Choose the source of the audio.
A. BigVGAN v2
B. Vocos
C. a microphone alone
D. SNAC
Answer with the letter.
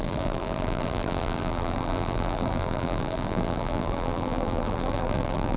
A